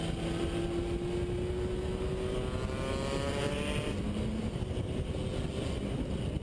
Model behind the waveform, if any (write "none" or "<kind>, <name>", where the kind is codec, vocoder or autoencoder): none